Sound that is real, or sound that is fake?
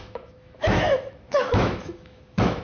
fake